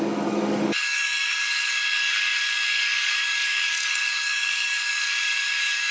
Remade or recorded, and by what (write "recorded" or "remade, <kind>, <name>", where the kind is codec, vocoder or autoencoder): remade, codec, DAC